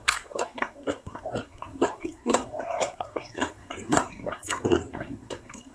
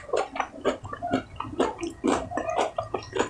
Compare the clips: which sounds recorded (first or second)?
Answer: second